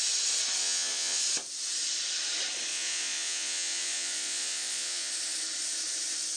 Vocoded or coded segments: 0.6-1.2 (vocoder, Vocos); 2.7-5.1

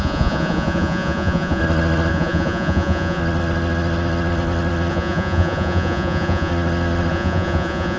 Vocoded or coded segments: 0.0-1.6 (vocoder, Vocos); 2.1-3.2; 4.9-6.5; 7.1-8.0

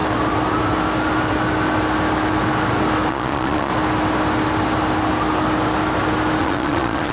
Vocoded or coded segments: 3.1-3.7 (vocoder, Vocos); 6.4-7.1